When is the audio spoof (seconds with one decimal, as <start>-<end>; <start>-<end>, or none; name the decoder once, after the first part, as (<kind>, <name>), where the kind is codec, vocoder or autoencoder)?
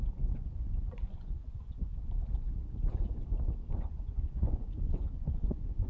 0.0-1.9 (vocoder, Vocos); 3.7-5.9